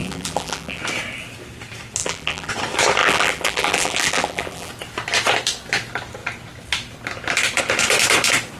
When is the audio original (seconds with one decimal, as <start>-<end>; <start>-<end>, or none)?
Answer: 0.8-2.0; 2.5-3.0; 4.7-8.6